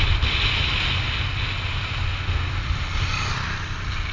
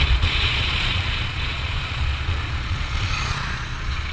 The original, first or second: first